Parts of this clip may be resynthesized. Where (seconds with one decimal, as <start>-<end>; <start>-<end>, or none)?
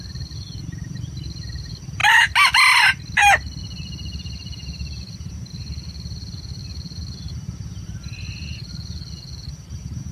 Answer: 0.0-2.0; 3.6-10.1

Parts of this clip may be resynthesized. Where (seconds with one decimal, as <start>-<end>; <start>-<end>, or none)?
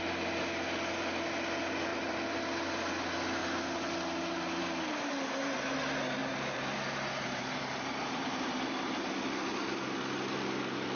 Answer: 1.9-2.4; 6.2-8.7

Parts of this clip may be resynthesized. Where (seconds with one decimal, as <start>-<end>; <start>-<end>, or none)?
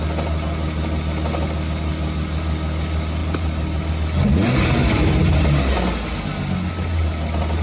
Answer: 3.2-3.9; 4.8-5.7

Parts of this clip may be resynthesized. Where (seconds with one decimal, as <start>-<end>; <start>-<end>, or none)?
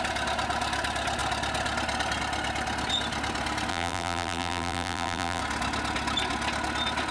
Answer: 3.7-5.4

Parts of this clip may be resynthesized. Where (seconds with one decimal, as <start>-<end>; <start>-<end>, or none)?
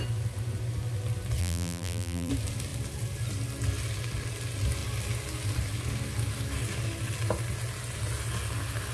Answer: 1.4-2.3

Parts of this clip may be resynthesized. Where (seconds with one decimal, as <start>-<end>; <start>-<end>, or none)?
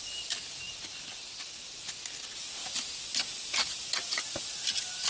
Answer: 2.6-5.1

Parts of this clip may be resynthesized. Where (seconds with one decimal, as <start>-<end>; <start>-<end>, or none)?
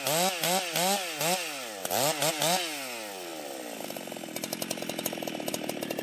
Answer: none